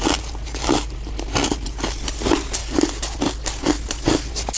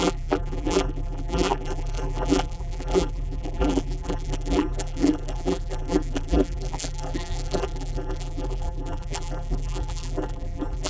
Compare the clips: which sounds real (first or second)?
first